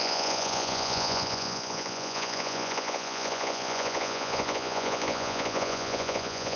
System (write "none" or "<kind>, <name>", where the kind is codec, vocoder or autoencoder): vocoder, Vocos